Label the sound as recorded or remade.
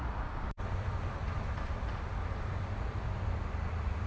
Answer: remade